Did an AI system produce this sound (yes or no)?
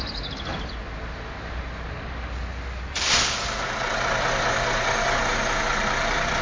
no